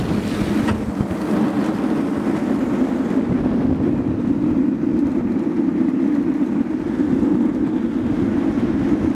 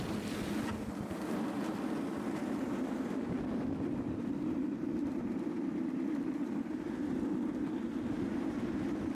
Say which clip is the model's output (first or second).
second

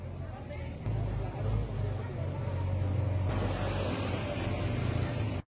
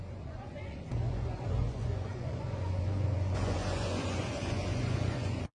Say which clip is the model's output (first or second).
second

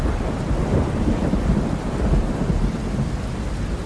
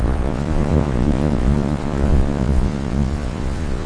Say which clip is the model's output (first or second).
second